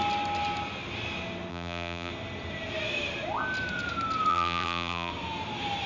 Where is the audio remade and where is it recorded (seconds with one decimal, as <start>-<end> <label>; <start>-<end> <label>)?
0.0-1.5 recorded; 1.5-2.1 remade; 2.1-4.3 recorded; 4.3-5.1 remade; 5.1-5.9 recorded